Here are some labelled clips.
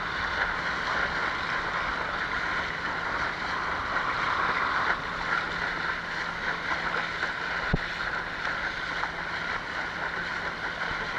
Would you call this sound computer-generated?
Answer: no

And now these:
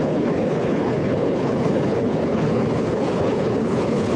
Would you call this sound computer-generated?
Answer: yes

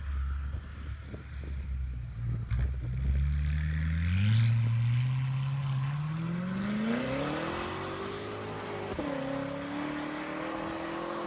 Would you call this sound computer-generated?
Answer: no